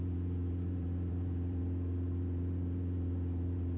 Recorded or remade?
remade